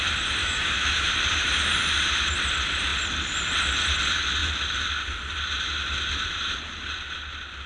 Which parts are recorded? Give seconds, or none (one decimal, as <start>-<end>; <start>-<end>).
0.0-0.4; 1.1-7.7